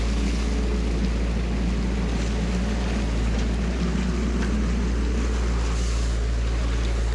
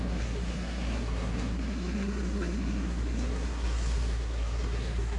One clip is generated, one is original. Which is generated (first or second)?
second